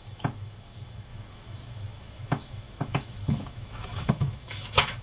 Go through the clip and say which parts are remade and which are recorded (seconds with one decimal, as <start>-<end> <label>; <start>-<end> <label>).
0.0-5.0 remade